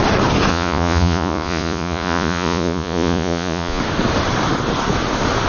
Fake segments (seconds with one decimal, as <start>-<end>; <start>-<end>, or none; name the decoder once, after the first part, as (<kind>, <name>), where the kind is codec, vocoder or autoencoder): 0.5-3.8 (vocoder, Vocos)